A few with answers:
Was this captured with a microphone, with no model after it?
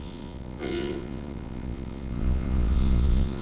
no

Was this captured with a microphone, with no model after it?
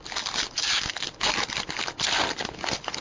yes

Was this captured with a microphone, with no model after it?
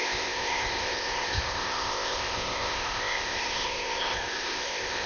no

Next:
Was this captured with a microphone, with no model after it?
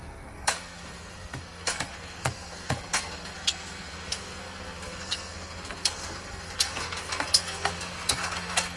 no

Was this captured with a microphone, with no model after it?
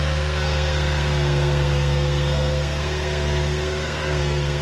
no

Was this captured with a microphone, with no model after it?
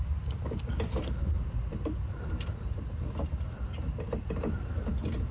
yes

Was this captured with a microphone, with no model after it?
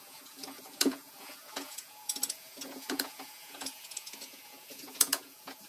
no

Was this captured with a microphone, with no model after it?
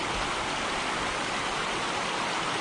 no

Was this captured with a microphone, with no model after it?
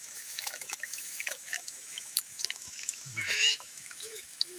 no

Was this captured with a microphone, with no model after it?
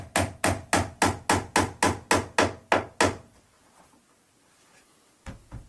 yes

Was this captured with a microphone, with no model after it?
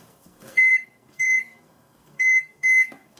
no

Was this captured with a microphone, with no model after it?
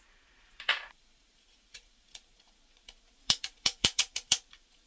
no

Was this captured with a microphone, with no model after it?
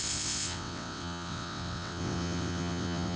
no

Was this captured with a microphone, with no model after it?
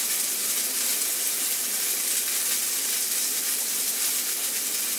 yes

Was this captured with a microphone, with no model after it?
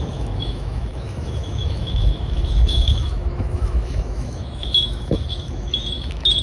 no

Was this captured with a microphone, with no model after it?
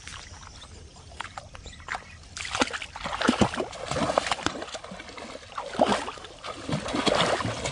yes